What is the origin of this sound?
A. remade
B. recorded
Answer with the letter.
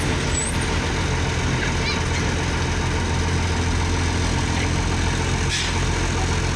B